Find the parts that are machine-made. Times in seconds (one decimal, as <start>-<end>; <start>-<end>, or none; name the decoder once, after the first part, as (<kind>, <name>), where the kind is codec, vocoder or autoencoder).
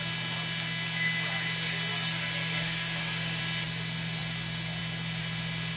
1.9-3.4 (codec, DAC)